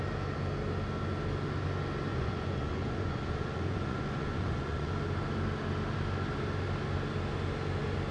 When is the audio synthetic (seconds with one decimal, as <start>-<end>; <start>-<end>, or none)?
2.1-4.9

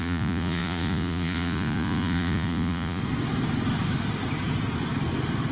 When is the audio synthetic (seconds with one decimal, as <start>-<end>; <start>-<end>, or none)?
0.0-3.0

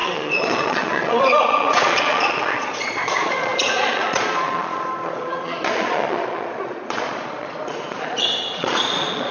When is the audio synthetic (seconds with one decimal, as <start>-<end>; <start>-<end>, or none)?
0.0-9.3

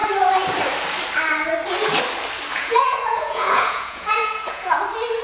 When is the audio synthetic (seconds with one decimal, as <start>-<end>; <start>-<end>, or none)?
2.5-4.8

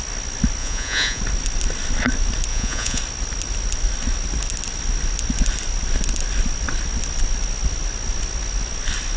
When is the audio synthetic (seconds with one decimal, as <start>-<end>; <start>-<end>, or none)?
0.6-1.2; 2.5-3.0